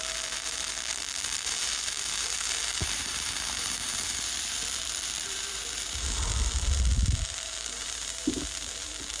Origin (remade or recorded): remade